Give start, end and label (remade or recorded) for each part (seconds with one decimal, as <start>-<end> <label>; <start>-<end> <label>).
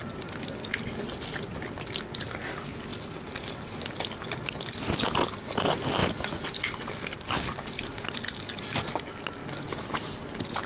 0.0-10.7 recorded